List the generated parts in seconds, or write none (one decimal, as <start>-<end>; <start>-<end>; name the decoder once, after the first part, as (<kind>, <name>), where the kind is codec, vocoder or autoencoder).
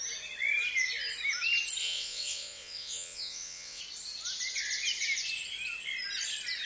1.8-3.8 (vocoder, WaveNeXt)